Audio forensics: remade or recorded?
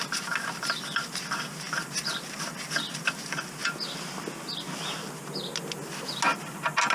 recorded